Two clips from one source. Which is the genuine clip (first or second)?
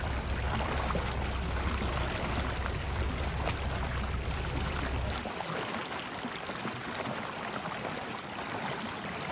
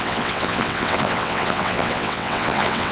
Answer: first